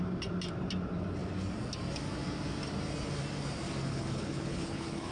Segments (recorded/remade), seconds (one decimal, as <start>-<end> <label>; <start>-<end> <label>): 0.0-3.9 recorded; 3.9-5.1 remade